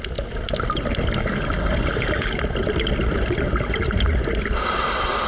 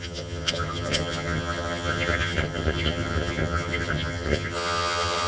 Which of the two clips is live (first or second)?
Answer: first